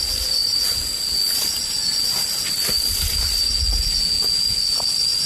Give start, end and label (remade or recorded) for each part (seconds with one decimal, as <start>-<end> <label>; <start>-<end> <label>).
0.0-5.3 recorded